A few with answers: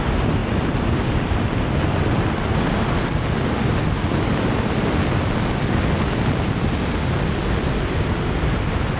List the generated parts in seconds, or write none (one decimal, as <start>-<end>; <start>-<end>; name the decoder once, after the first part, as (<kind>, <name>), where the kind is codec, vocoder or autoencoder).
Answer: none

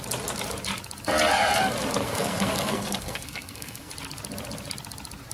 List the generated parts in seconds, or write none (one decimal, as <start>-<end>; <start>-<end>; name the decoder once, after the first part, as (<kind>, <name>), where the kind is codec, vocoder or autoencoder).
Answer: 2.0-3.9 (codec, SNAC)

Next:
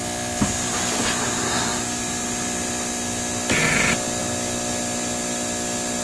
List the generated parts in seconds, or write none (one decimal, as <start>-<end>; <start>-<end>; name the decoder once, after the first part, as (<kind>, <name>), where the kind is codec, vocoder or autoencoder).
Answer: none

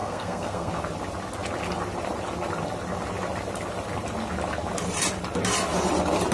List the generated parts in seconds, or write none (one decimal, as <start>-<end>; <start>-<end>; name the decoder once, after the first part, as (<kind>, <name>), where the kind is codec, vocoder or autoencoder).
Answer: 0.0-0.7 (codec, SNAC)

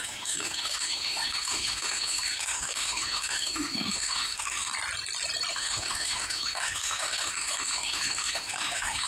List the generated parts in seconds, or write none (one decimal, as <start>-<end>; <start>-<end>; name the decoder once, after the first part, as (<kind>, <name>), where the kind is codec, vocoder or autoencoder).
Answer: 0.0-4.7 (autoencoder, DAC-VAE); 5.5-9.1

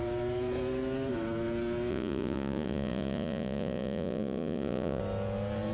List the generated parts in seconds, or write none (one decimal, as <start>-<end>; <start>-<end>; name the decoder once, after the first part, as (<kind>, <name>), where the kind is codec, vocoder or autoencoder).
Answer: 1.9-5.0 (vocoder, Vocos)

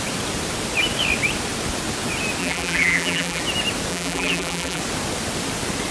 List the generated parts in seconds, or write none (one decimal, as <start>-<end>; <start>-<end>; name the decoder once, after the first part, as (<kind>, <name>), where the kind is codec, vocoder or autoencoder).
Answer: 2.4-3.4 (vocoder, BigVGAN v2); 3.9-4.8

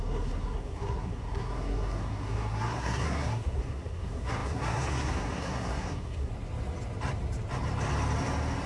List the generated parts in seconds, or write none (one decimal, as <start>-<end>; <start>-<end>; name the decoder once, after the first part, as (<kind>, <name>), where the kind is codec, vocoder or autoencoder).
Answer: 0.0-6.3 (codec, SNAC)